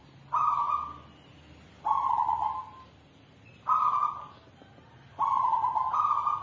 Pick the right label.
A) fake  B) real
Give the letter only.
B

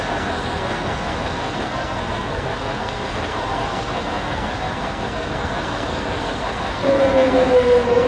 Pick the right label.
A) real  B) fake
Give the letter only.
B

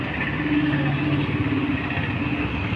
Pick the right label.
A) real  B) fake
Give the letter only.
A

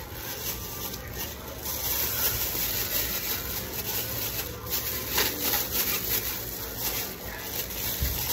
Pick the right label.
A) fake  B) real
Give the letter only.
B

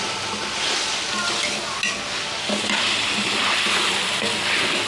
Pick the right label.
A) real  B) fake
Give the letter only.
A